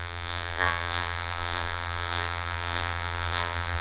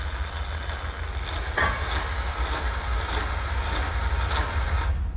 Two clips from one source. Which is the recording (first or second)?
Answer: second